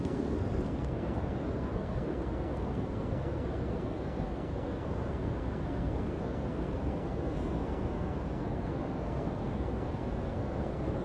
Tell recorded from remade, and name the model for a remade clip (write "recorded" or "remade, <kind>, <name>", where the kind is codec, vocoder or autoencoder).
remade, codec, SNAC